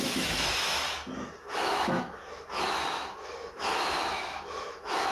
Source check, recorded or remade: remade